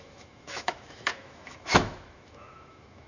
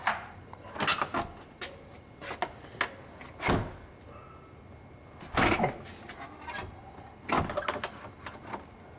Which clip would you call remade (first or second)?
first